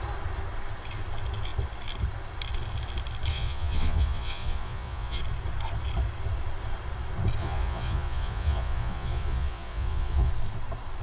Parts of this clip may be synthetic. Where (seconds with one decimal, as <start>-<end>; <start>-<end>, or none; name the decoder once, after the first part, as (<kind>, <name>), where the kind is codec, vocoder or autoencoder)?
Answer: 3.3-5.2 (vocoder, Vocos); 7.4-10.3